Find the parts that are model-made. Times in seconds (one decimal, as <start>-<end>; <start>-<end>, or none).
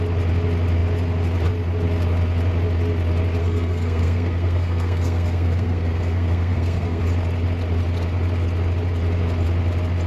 3.4-7.0